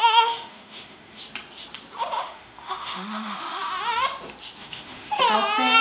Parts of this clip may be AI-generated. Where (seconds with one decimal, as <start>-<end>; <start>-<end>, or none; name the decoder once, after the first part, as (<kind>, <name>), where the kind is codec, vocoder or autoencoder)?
0.0-1.2 (autoencoder, DAC-VAE); 2.2-3.6; 4.6-5.2